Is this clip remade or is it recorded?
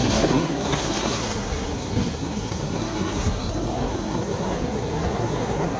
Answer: remade